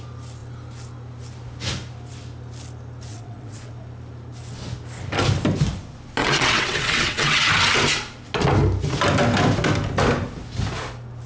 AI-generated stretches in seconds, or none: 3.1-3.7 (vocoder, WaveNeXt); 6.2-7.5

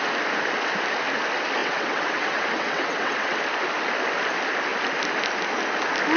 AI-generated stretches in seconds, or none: 1.6-3.4 (vocoder, WaveNeXt)

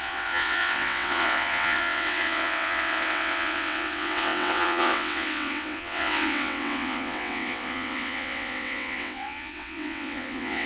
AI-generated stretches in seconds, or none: 0.0-10.7 (vocoder, WaveNeXt)

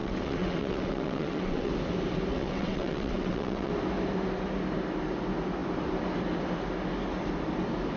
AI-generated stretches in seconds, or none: 0.0-1.7 (vocoder, WaveNeXt); 2.3-3.7